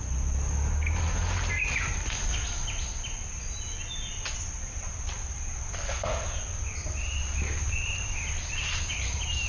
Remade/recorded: recorded